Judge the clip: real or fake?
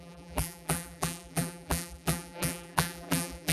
fake